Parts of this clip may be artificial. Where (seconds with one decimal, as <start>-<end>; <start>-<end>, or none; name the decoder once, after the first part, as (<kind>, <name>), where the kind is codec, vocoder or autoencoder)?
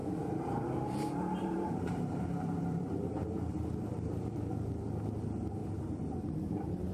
0.0-4.1 (vocoder, BigVGAN v2); 5.6-6.9